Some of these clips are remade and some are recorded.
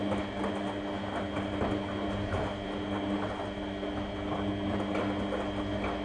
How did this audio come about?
recorded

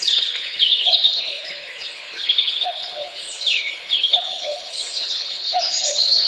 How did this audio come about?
remade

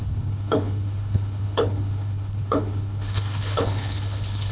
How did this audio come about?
remade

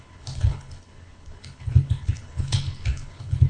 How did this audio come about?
remade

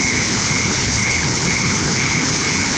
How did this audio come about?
remade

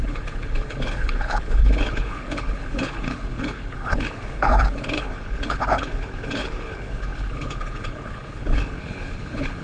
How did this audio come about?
remade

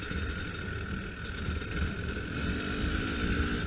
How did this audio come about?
recorded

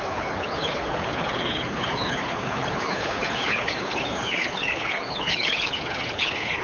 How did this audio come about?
remade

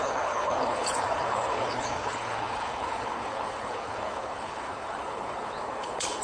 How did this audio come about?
remade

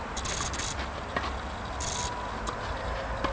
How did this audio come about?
recorded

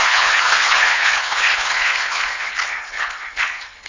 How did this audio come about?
remade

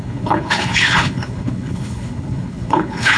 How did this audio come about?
remade